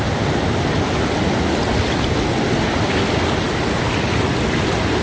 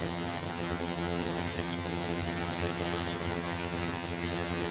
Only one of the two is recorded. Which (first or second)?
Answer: first